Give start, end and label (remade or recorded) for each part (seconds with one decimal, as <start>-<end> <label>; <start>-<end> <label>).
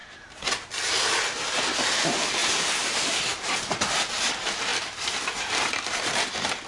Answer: 0.0-1.9 recorded; 1.9-6.7 remade